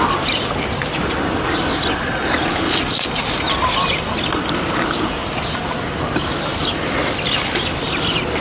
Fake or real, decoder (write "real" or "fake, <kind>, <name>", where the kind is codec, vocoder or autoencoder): real